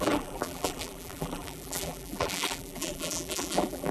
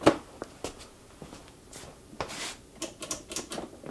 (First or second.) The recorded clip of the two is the second